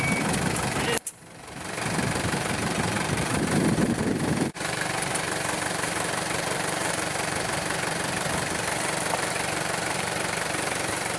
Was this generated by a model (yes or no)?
yes